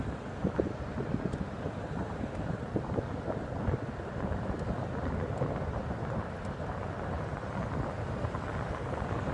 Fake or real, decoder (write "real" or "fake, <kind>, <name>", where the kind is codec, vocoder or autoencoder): real